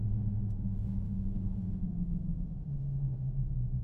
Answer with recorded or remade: remade